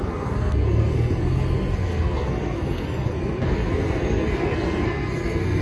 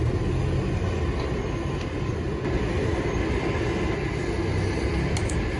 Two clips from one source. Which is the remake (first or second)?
first